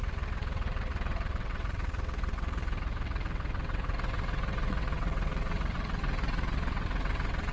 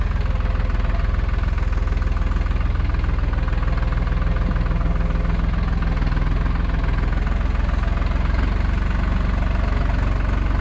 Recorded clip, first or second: second